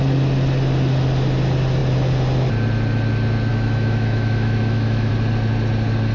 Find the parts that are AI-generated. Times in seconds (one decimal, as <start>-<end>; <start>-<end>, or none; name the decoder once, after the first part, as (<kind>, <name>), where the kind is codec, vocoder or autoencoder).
3.5-5.1 (autoencoder, DAC-VAE)